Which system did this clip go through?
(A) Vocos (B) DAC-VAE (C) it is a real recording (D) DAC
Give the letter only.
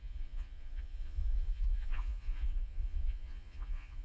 A